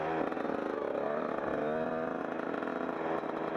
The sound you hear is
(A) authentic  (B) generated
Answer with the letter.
A